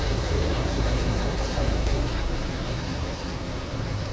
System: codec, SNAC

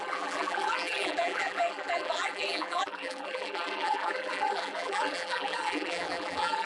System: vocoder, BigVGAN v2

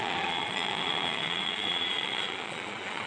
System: vocoder, Vocos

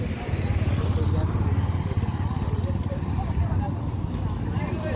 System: none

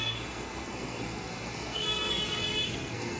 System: codec, SNAC